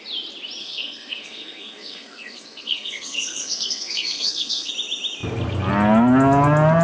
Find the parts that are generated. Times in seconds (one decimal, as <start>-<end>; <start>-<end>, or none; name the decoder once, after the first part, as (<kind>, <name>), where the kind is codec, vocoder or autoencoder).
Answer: 0.6-4.7 (codec, SNAC)